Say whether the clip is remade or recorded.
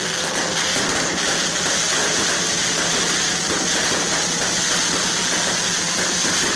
recorded